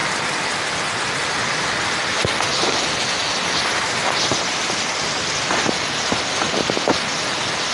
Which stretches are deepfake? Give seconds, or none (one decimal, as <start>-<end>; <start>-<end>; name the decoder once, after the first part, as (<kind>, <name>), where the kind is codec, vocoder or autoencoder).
none